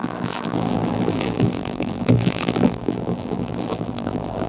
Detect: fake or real fake